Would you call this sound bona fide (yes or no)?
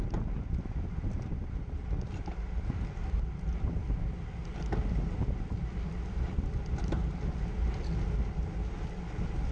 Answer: yes